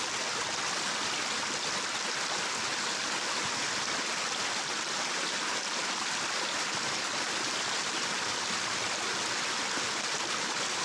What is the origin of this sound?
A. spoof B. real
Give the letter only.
B